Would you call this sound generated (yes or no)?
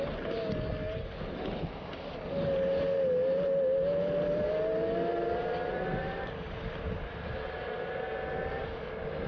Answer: no